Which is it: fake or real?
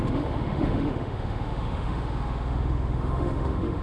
fake